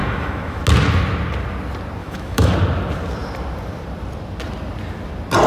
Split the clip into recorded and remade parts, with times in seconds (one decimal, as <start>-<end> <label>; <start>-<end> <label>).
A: 0.0-0.6 remade; 0.6-2.0 recorded; 2.0-2.5 remade; 2.5-5.5 recorded